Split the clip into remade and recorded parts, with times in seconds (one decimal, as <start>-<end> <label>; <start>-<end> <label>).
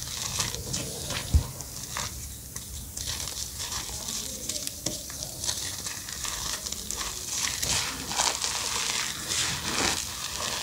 0.0-10.6 recorded